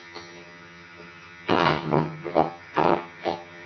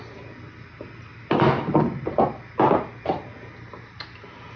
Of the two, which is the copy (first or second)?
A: first